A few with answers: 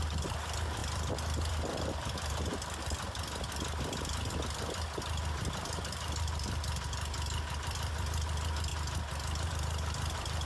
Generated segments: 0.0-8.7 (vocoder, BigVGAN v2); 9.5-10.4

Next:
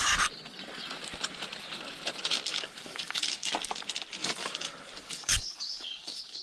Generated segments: 2.5-3.5 (codec, DAC); 4.2-6.4

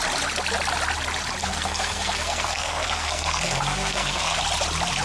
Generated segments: 1.4-4.4 (codec, SNAC)

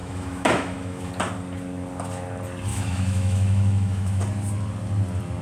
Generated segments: 0.0-1.1 (autoencoder, DAC-VAE); 2.7-4.2

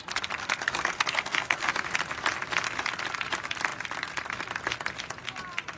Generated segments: 0.4-1.7 (codec, SNAC)

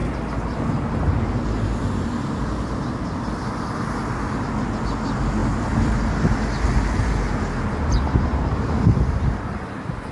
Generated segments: none

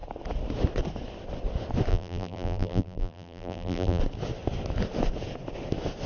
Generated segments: 1.9-4.0 (vocoder, BigVGAN v2)